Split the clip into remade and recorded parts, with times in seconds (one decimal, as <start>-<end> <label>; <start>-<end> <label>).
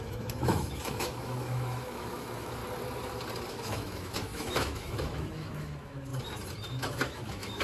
0.0-2.6 remade; 2.6-3.5 recorded; 3.5-6.1 remade; 6.1-6.7 recorded; 6.7-7.6 remade